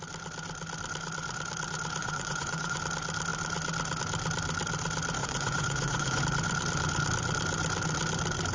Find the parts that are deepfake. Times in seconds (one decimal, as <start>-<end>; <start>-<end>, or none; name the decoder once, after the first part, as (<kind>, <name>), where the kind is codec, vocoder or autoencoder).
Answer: 2.0-2.8 (vocoder, Vocos); 5.2-6.2